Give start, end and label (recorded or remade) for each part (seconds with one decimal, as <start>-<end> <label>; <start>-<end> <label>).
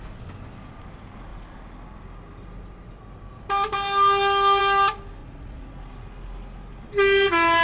0.0-5.2 recorded; 5.2-5.8 remade; 5.8-7.6 recorded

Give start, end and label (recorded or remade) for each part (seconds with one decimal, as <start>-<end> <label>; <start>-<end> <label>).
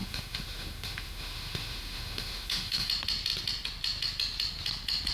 0.0-2.9 remade; 2.9-5.1 recorded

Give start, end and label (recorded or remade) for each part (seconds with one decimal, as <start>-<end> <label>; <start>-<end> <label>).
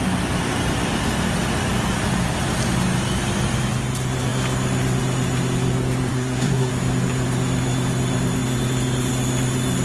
0.0-6.1 recorded; 6.1-6.7 remade; 6.7-9.8 recorded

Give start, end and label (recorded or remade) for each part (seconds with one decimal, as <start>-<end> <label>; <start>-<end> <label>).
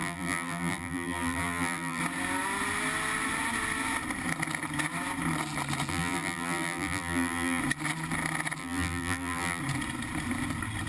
0.0-2.0 remade; 2.0-5.9 recorded; 5.9-7.6 remade; 7.6-8.6 recorded; 8.6-9.6 remade; 9.6-10.9 recorded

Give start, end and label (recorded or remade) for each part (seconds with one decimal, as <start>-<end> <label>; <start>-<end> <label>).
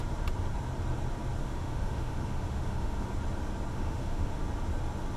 0.0-1.4 recorded; 1.4-3.1 remade; 3.1-3.7 recorded; 3.7-4.4 remade; 4.4-5.2 recorded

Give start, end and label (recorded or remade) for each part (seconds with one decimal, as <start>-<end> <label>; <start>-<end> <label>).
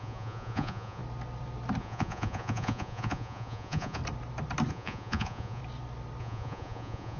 0.0-1.0 remade; 1.0-1.8 recorded; 1.8-4.0 remade; 4.0-4.7 recorded; 4.7-5.6 remade; 5.6-6.2 recorded; 6.2-7.2 remade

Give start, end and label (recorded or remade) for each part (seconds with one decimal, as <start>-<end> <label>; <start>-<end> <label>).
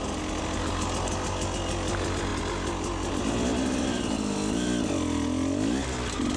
0.0-6.4 recorded